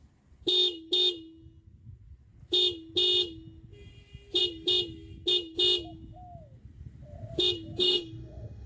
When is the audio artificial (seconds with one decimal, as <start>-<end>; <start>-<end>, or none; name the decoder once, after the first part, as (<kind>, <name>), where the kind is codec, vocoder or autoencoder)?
7.8-8.7 (autoencoder, DAC-VAE)